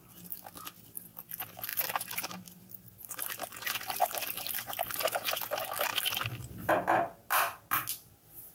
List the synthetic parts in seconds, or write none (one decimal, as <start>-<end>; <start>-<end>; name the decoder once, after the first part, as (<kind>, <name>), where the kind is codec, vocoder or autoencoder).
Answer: none